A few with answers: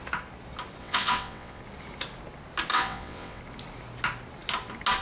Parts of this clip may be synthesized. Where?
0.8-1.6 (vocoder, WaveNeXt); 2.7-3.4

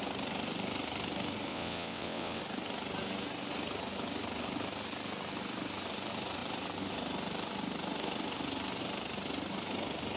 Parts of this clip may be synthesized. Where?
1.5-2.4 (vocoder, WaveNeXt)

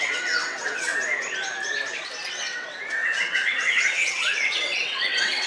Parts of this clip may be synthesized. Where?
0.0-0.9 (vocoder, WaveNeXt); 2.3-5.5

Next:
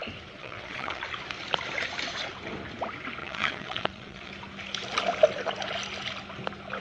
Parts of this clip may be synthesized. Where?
0.4-1.0 (vocoder, WaveNeXt); 3.2-4.3